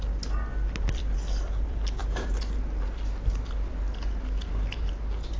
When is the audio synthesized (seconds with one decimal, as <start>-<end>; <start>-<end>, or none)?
none